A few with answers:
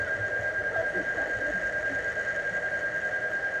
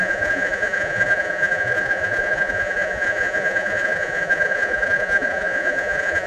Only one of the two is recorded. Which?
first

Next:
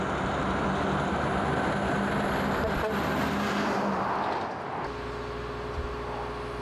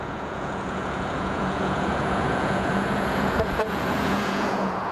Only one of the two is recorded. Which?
first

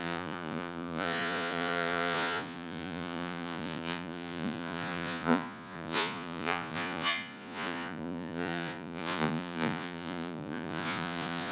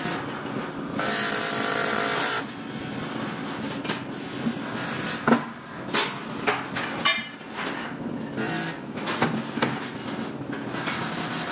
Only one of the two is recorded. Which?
second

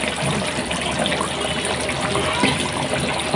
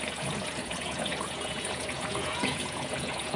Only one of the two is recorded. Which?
first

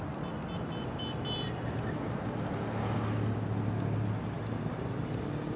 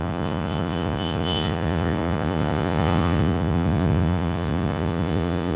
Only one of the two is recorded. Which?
first